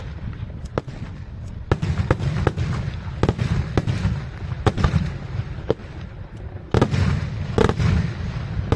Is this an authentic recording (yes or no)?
yes